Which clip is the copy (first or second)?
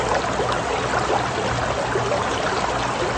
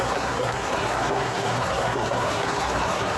second